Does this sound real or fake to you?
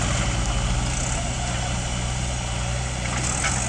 real